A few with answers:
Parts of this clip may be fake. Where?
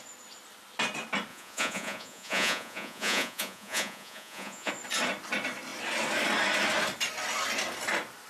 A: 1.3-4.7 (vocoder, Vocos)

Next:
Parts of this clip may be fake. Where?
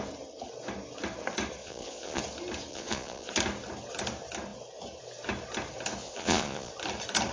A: 1.6-2.2 (vocoder, Vocos); 2.7-3.3; 6.0-6.7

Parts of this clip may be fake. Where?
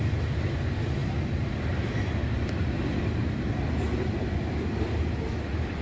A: none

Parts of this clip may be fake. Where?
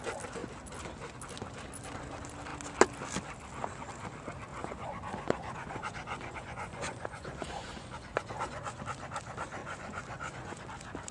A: 4.5-8.8 (vocoder, Vocos); 9.6-10.6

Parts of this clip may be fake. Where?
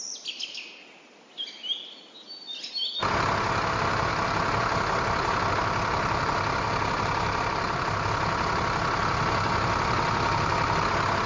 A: none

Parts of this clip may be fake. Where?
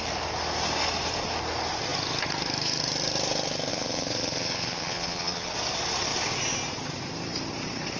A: 3.7-5.5 (vocoder, Vocos)